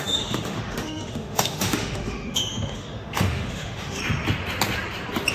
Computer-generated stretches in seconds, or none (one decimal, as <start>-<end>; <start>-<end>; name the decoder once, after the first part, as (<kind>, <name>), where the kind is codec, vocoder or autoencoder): 0.0-4.0 (autoencoder, DAC-VAE)